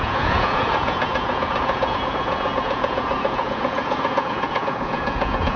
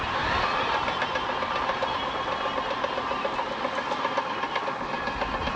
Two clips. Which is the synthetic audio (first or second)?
first